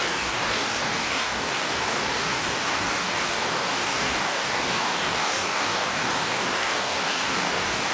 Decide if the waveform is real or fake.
fake